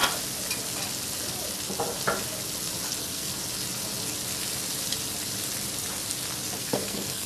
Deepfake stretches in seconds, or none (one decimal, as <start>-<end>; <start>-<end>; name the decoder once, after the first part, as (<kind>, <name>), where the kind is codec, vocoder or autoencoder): 3.0-3.4 (codec, SNAC); 6.6-7.3